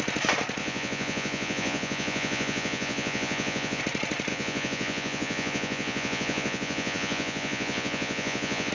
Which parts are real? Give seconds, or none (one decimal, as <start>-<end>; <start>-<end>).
0.0-0.6; 3.8-4.3